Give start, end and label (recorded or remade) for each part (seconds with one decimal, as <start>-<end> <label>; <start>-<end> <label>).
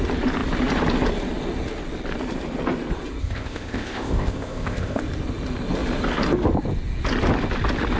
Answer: 0.0-3.2 recorded; 3.2-5.0 remade; 5.0-8.0 recorded